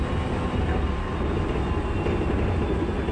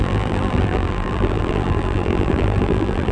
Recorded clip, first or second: first